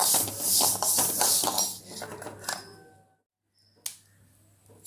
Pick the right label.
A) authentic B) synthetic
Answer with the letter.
A